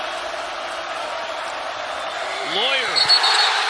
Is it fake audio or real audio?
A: real